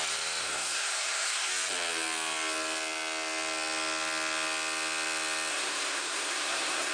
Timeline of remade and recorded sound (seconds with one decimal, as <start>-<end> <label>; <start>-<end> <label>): 0.0-0.4 recorded; 0.4-1.5 remade; 1.5-5.5 recorded; 5.5-6.9 remade